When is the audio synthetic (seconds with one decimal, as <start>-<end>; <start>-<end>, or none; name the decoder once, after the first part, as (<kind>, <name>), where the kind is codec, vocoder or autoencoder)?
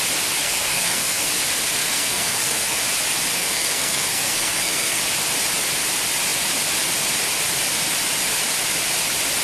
0.4-1.3 (codec, SNAC); 1.8-2.8; 3.4-5.0